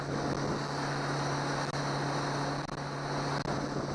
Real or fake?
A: real